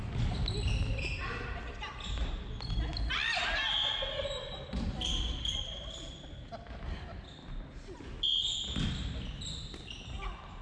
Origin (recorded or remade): recorded